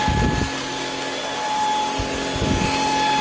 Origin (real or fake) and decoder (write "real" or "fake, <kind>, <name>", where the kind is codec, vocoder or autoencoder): real